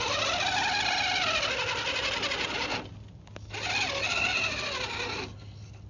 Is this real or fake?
real